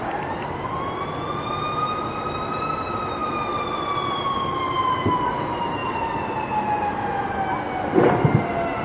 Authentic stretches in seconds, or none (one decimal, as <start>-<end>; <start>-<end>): 0.0-8.8